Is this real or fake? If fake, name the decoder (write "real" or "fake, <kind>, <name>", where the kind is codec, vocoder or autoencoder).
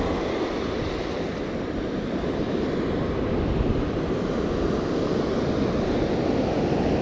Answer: real